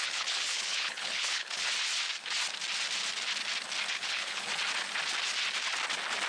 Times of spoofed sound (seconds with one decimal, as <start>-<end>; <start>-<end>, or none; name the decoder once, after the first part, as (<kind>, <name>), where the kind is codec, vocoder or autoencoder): 0.0-1.7 (codec, HILCodec); 3.9-4.5